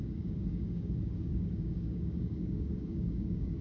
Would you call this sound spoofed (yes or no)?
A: yes